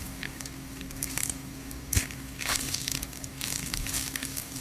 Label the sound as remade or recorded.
remade